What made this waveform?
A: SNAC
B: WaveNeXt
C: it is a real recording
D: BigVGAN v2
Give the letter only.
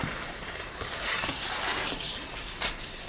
D